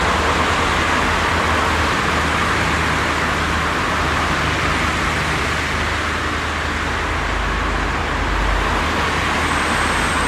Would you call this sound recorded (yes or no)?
yes